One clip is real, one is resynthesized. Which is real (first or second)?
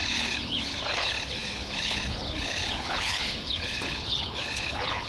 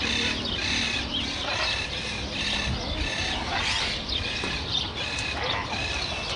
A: second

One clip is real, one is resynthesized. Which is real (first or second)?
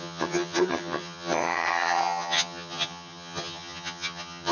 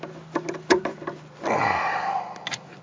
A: second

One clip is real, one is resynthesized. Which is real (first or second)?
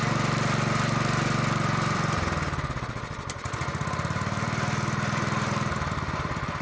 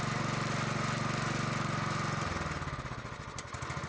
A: second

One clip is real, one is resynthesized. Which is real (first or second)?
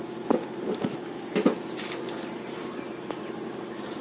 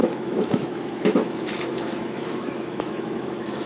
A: first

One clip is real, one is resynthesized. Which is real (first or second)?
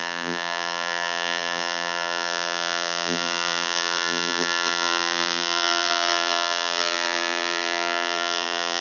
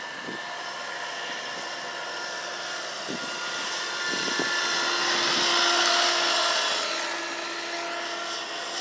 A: second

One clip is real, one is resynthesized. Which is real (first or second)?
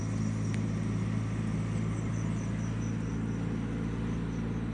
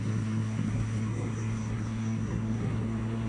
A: first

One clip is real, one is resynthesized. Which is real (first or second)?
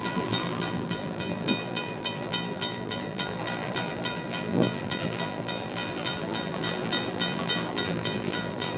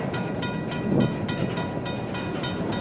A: second